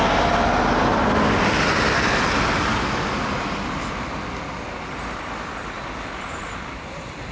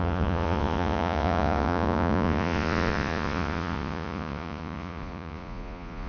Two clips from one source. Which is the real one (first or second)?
first